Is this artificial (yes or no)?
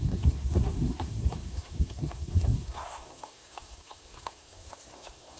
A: yes